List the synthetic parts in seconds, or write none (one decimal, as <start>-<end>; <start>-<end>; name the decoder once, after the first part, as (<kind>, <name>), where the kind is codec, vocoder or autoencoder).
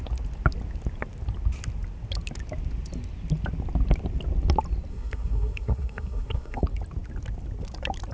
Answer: 4.9-6.6 (codec, SNAC)